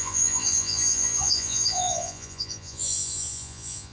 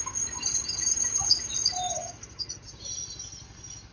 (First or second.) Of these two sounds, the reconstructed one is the first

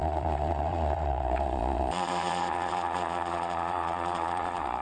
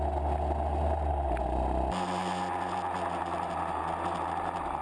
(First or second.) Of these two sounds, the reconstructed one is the first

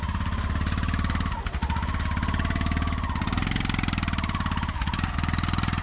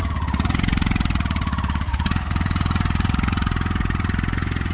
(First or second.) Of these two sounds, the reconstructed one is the second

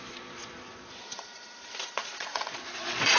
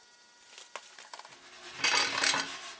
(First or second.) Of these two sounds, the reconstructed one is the first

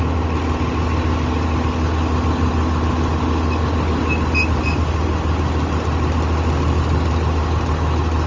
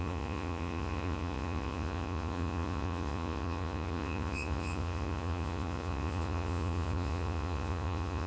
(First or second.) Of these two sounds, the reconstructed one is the second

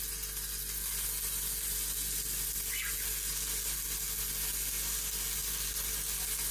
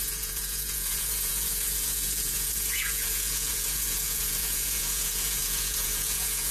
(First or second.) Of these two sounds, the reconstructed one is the second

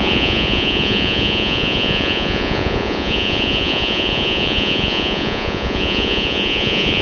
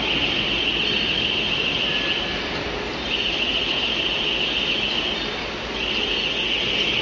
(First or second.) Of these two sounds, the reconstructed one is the first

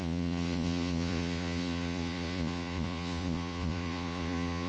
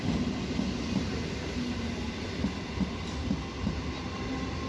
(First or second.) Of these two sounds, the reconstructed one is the first